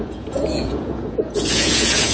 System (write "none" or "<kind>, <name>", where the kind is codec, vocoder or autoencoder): vocoder, Vocos